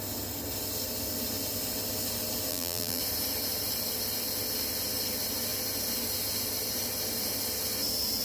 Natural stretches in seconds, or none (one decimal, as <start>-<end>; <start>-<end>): 0.0-2.5; 3.0-8.2